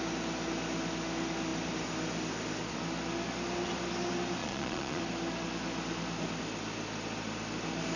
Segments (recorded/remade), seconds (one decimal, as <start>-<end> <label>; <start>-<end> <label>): 0.0-4.4 recorded; 4.4-5.0 remade; 5.0-8.0 recorded